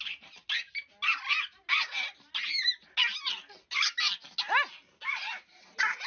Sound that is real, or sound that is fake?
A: real